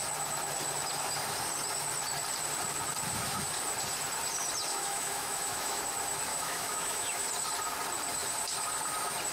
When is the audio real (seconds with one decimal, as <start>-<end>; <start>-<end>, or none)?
0.0-4.7; 5.8-6.3; 7.3-9.3